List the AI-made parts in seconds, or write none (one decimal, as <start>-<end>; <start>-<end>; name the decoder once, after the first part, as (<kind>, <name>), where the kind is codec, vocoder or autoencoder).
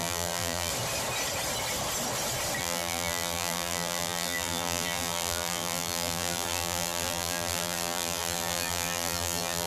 0.0-0.7 (vocoder, BigVGAN v2); 2.6-9.7